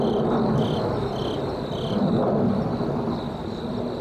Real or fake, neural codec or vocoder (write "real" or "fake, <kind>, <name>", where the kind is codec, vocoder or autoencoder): real